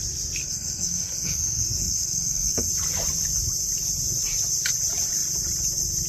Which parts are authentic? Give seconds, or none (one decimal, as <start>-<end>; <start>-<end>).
0.0-0.4; 2.7-6.1